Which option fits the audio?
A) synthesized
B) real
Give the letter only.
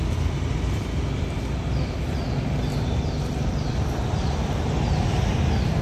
B